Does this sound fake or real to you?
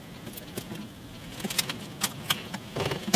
real